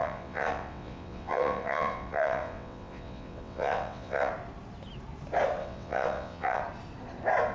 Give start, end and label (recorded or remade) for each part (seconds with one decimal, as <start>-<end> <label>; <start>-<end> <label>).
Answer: 0.0-4.3 remade; 4.3-5.6 recorded; 5.6-6.6 remade; 6.6-7.5 recorded